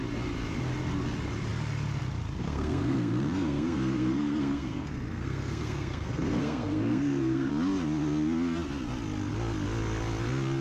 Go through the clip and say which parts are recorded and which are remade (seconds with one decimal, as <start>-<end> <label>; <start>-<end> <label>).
0.0-2.4 recorded; 2.4-7.5 remade; 7.5-10.6 recorded